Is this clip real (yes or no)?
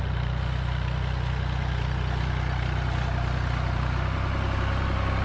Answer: yes